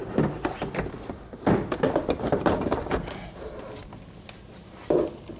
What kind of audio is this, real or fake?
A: real